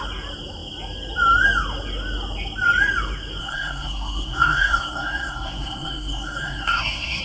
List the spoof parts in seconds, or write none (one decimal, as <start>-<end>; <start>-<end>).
3.4-7.2